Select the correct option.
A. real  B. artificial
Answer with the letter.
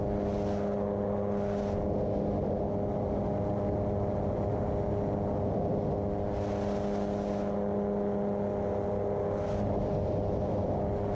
A